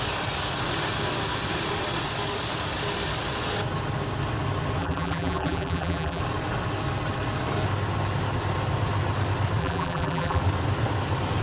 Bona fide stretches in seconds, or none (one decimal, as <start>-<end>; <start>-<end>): 0.0-4.8; 6.2-9.6; 10.4-11.4